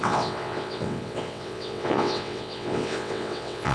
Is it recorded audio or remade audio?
remade